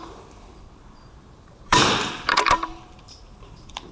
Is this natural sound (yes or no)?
no